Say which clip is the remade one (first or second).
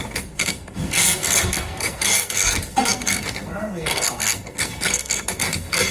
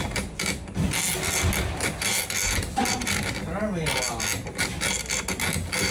first